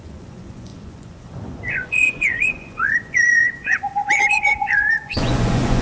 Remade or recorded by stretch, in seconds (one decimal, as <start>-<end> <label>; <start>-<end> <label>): 0.0-5.8 remade